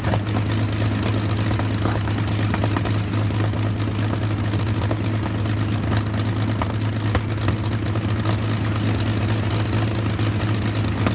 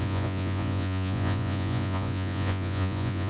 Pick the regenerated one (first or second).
second